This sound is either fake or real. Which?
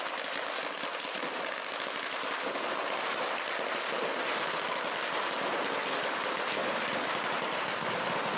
real